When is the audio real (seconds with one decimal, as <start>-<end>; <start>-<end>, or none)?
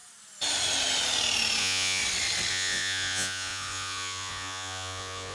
0.0-1.6; 2.0-2.5